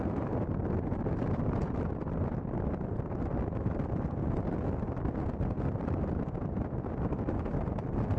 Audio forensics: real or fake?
real